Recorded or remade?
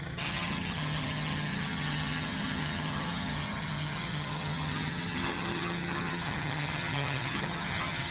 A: remade